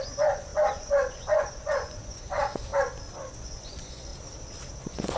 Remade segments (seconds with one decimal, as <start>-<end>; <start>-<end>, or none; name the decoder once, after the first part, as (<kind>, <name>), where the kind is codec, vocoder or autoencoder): 0.0-2.7 (vocoder, Vocos); 3.3-4.1; 4.7-5.2